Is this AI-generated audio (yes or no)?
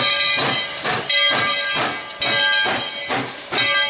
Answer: no